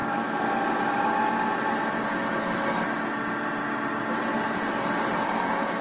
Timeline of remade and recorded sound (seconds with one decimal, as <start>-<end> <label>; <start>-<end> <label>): 0.0-5.8 recorded